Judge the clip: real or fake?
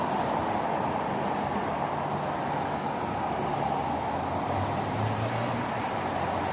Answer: real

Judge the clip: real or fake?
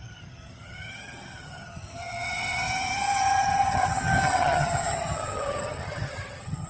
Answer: fake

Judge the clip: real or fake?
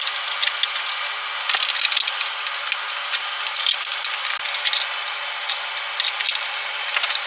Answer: real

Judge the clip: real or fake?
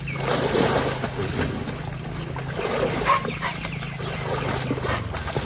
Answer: real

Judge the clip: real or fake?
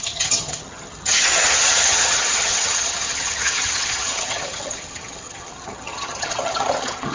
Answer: fake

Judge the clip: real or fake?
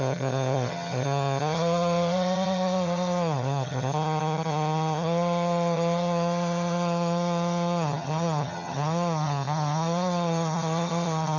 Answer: fake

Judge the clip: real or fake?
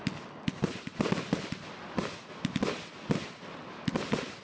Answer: real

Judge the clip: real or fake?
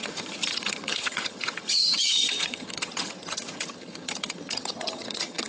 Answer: fake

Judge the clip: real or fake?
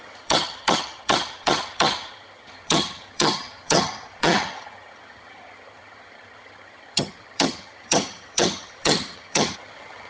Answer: fake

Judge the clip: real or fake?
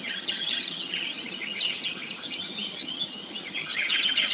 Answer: fake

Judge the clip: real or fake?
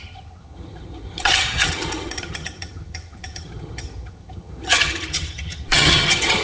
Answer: fake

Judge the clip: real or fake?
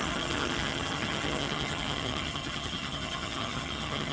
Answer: fake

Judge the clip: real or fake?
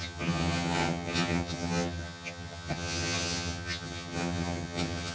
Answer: fake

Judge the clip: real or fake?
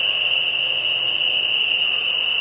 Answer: real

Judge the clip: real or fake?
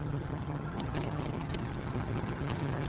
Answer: fake